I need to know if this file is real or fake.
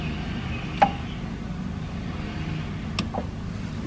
real